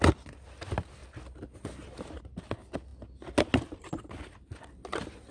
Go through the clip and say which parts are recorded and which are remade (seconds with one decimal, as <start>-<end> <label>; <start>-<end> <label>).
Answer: 0.0-5.3 recorded